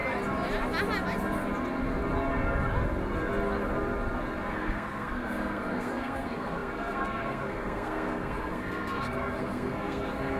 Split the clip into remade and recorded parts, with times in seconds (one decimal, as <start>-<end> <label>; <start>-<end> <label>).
0.0-4.5 recorded; 4.5-10.4 remade